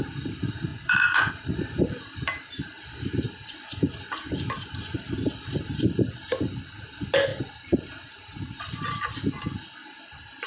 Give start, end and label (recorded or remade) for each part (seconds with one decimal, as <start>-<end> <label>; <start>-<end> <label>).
0.0-0.7 recorded; 0.7-1.3 remade; 1.3-10.5 recorded